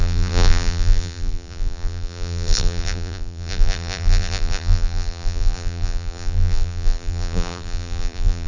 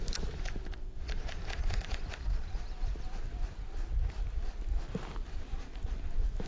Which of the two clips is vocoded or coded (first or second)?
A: first